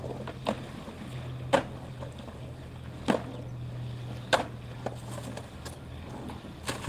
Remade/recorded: recorded